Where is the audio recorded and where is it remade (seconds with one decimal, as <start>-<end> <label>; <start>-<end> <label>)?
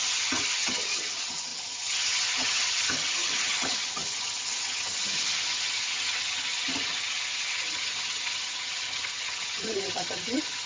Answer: 0.0-10.7 remade